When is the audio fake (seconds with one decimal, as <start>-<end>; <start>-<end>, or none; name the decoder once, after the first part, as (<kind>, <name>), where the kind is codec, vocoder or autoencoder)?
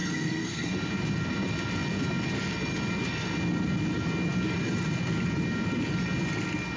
0.0-0.7 (codec, SNAC)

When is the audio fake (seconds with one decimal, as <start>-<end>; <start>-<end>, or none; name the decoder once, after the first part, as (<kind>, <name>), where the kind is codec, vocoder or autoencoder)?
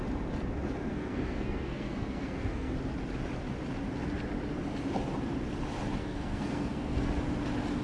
0.9-2.7 (codec, SNAC); 6.0-7.1